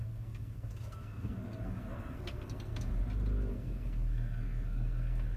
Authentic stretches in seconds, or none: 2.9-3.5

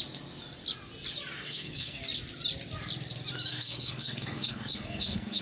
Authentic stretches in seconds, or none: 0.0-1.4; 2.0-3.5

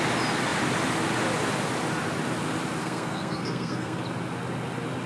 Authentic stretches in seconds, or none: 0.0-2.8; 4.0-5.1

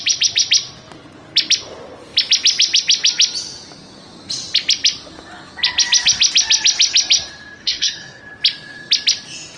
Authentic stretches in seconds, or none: 0.0-7.6; 8.2-9.6

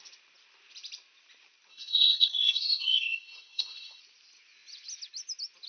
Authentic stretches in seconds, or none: 0.0-1.7; 4.0-5.7